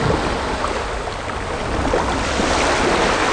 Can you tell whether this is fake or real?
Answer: real